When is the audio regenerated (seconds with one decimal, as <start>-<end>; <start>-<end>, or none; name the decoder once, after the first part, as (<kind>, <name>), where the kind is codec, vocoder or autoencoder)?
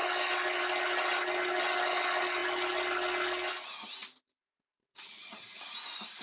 4.9-5.7 (vocoder, WaveNeXt)